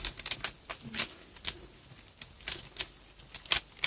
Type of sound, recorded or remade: recorded